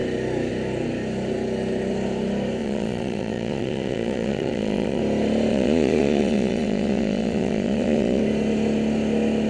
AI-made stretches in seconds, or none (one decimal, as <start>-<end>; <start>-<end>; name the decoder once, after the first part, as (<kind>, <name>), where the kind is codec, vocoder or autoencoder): 2.6-5.0 (vocoder, Vocos); 5.5-8.2